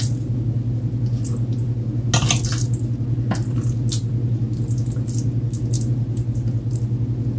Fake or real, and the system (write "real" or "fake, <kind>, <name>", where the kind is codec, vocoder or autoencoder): real